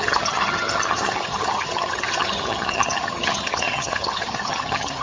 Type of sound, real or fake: fake